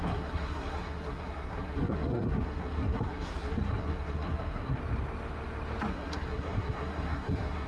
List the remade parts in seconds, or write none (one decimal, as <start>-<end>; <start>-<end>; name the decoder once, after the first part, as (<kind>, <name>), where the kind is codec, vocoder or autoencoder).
0.0-4.8 (codec, SNAC); 5.9-7.7